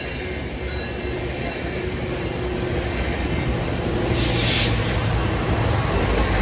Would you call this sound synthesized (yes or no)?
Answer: no